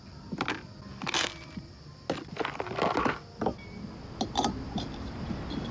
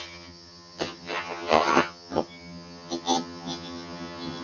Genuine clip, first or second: first